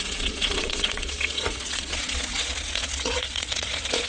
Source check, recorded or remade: remade